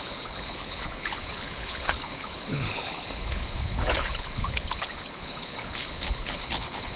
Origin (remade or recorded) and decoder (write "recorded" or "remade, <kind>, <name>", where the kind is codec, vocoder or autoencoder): remade, codec, HILCodec